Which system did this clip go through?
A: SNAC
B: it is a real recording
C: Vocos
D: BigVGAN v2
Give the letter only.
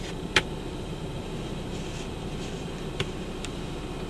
D